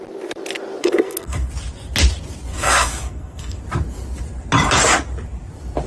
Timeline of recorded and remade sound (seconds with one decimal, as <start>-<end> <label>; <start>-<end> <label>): 0.0-0.8 recorded; 0.8-1.5 remade; 1.5-2.5 recorded; 2.5-3.6 remade; 3.6-5.9 recorded